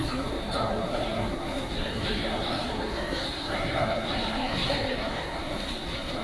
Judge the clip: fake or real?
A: fake